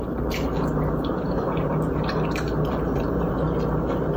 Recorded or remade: remade